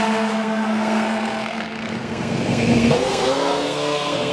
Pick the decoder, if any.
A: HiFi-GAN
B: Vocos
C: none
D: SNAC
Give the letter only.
D